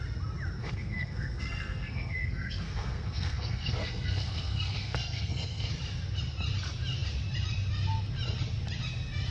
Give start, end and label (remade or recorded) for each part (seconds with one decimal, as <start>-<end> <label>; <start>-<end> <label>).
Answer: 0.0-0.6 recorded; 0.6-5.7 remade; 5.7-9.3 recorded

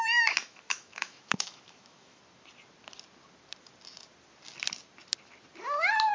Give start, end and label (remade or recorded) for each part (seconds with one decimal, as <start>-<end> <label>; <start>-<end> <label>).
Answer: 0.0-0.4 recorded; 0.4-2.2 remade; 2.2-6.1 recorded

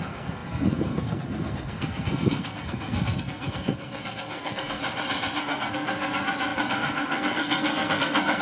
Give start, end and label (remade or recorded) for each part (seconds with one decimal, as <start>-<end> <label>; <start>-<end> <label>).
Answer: 0.0-4.8 remade; 4.8-5.4 recorded; 5.4-8.4 remade